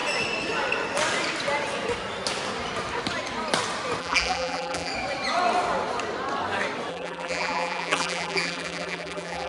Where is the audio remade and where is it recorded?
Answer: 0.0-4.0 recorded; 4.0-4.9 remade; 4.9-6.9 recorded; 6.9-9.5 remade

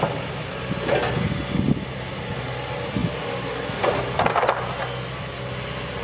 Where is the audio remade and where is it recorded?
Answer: 0.0-6.0 recorded

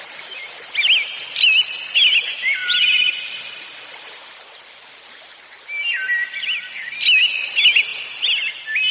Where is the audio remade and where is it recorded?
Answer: 0.0-0.8 recorded; 0.8-1.8 remade; 1.8-2.6 recorded; 2.6-5.2 remade; 5.2-8.9 recorded

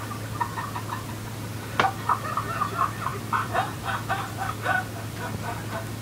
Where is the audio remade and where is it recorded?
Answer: 0.0-3.1 recorded; 3.1-4.1 remade; 4.1-6.0 recorded

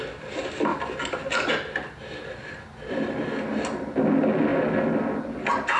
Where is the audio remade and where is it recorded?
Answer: 0.0-5.8 recorded

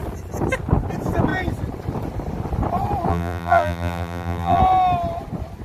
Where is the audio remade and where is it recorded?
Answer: 0.0-3.1 recorded; 3.1-4.6 remade; 4.6-5.6 recorded